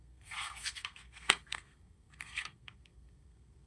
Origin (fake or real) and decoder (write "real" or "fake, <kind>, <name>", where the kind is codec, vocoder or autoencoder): fake, codec, SNAC